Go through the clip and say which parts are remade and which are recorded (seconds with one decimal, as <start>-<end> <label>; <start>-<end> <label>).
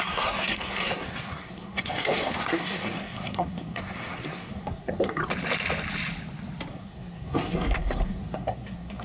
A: 0.0-5.2 remade; 5.2-6.7 recorded; 6.7-9.0 remade